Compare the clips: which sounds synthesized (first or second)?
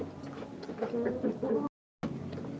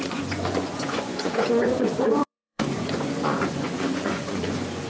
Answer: second